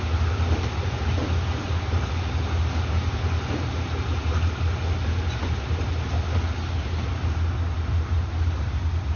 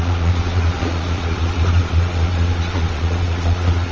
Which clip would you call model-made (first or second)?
second